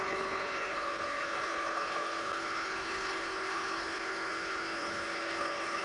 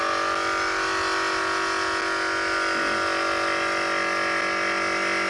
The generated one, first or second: first